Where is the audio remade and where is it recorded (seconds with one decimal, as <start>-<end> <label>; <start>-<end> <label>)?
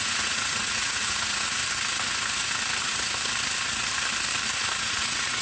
0.0-1.6 remade; 1.6-4.8 recorded; 4.8-5.4 remade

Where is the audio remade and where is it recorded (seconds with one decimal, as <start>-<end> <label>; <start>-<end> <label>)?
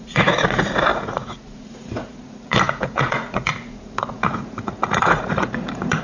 0.0-6.0 remade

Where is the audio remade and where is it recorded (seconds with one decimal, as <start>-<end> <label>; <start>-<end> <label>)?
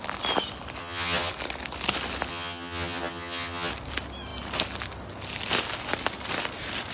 0.0-0.8 recorded; 0.8-1.3 remade; 1.3-2.3 recorded; 2.3-3.7 remade; 3.7-6.9 recorded